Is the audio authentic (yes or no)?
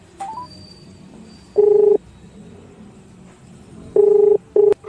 no